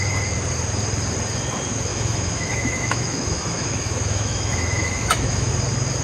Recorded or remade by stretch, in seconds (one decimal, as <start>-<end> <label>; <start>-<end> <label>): 0.0-1.9 recorded; 1.9-5.5 remade; 5.5-6.0 recorded